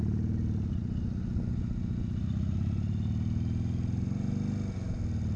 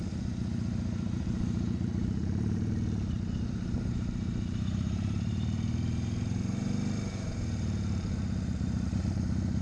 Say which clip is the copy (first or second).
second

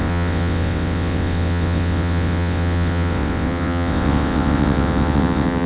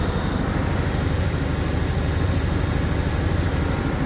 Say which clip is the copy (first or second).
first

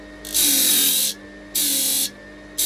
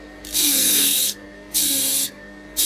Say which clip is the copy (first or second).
second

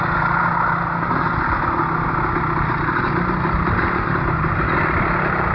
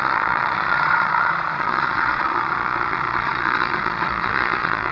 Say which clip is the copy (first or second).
second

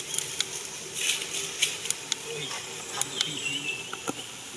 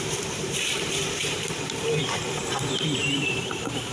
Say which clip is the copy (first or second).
second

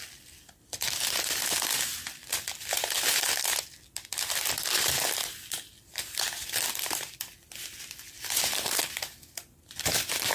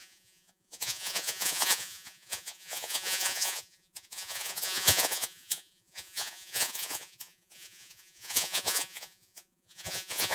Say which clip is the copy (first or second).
second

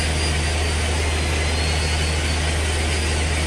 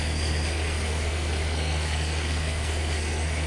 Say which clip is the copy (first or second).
second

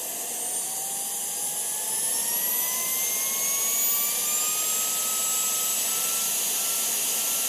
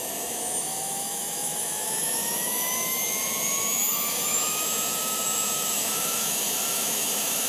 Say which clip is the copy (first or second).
second